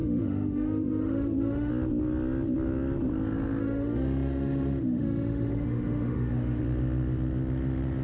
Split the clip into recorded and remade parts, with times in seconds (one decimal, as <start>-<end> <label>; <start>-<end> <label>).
0.0-1.7 remade; 1.7-3.6 recorded; 3.6-6.6 remade; 6.6-8.0 recorded